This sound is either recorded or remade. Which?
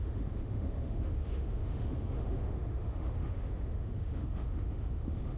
remade